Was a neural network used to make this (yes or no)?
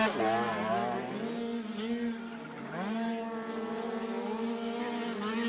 no